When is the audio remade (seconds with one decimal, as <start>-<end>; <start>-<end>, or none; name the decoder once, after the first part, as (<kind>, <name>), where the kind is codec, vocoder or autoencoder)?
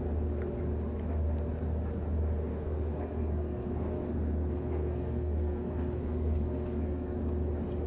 2.5-7.2 (codec, SNAC)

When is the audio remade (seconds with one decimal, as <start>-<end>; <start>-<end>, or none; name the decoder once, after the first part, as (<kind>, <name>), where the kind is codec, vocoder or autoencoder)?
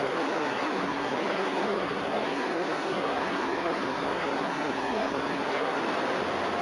0.0-5.8 (codec, SNAC)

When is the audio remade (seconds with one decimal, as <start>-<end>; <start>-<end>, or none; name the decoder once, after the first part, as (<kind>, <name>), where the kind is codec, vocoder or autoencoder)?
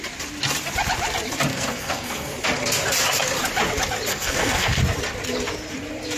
1.5-2.3 (codec, SNAC); 4.1-4.8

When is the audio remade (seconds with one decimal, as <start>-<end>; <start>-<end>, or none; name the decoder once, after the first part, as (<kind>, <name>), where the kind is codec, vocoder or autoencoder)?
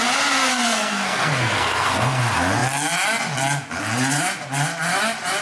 0.5-2.2 (codec, SNAC)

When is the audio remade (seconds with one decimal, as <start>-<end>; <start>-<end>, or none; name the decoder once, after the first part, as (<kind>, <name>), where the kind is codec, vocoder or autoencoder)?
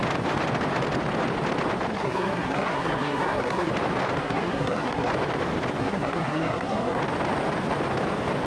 1.9-3.7 (codec, SNAC); 4.2-5.1; 5.8-7.0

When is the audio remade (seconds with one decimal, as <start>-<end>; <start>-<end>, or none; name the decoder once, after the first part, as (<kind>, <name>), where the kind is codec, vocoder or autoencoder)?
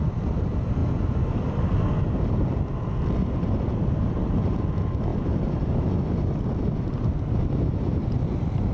none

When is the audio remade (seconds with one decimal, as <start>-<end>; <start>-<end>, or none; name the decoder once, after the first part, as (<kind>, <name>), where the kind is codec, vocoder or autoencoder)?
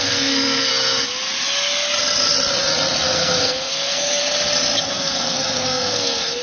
0.0-0.7 (codec, SNAC); 3.1-4.2; 4.8-6.4